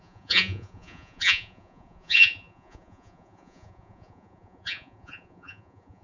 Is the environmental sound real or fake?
fake